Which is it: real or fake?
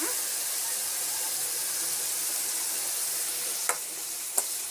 real